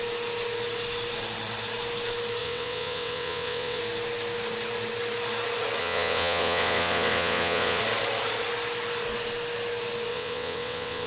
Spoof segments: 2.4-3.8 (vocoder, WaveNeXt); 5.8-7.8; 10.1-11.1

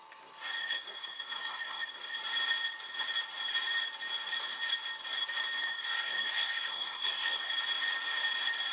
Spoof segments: 0.6-2.2 (codec, SNAC); 5.6-7.5

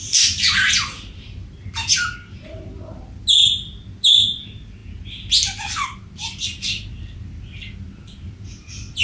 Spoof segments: none